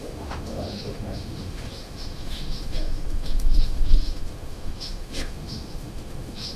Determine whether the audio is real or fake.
fake